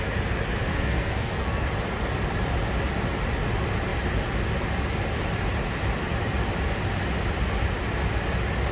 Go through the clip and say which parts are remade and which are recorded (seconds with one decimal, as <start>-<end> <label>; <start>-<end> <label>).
0.0-0.7 recorded; 0.7-1.7 remade; 1.7-8.7 recorded